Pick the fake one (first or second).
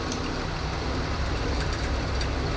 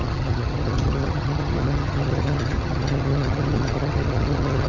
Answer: second